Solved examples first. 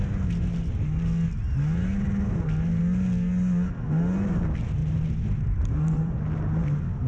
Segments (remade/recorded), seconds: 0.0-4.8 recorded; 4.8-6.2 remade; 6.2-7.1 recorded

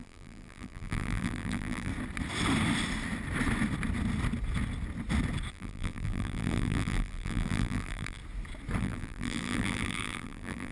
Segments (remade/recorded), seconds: 0.0-1.9 remade; 1.9-5.5 recorded; 5.5-8.2 remade; 8.2-8.8 recorded; 8.8-10.7 remade

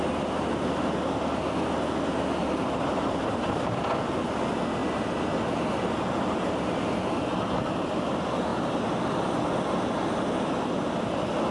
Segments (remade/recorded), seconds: 0.0-2.9 recorded; 2.9-3.8 remade; 3.8-11.5 recorded

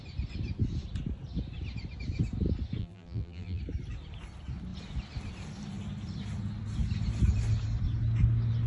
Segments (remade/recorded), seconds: 0.0-2.8 recorded; 2.8-3.6 remade; 3.6-8.7 recorded

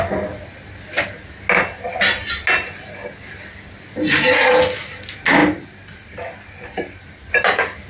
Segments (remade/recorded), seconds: 0.0-5.4 recorded; 5.4-7.3 remade; 7.3-7.9 recorded

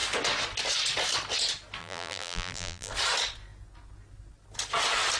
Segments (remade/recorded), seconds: 0.0-1.8 recorded; 1.8-2.9 remade; 2.9-5.2 recorded

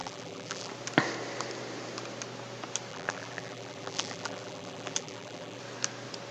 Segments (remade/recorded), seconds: 0.0-0.7 remade; 0.7-2.9 recorded; 2.9-5.6 remade; 5.6-6.3 recorded